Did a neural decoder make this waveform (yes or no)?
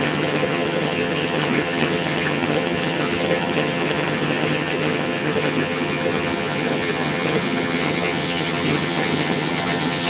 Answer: yes